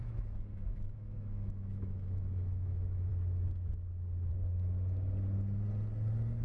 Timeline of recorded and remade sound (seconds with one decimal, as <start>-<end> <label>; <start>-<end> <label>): 0.0-3.1 remade; 3.1-6.4 recorded

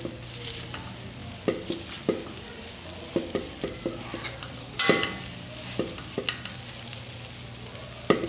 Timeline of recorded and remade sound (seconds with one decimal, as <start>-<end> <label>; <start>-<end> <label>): 0.0-1.2 recorded; 1.2-6.2 remade; 6.2-8.3 recorded